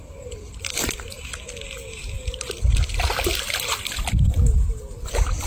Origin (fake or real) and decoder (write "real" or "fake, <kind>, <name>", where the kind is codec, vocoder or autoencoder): real